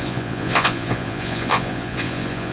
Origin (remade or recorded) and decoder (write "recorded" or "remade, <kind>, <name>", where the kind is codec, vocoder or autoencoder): remade, vocoder, Vocos